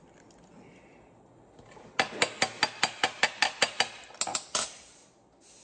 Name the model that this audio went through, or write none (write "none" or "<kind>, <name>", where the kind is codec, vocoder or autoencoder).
none